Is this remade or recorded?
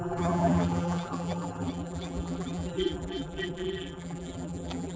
remade